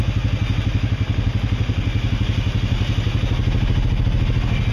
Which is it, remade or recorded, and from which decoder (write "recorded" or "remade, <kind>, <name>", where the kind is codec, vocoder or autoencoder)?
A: recorded